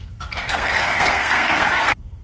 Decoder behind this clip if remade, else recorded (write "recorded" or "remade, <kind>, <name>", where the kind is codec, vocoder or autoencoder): remade, codec, SNAC